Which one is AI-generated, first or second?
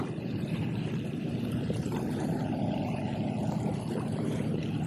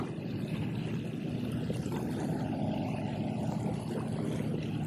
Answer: first